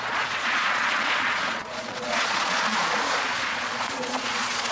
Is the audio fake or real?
fake